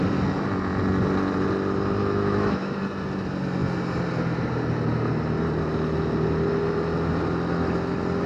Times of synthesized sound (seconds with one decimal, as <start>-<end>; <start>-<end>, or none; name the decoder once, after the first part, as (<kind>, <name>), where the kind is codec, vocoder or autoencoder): 2.0-2.8 (autoencoder, DAC-VAE)